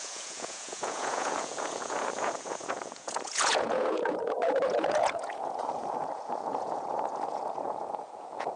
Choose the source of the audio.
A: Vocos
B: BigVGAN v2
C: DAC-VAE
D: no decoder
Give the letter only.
A